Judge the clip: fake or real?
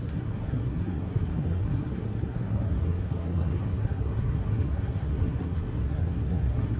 fake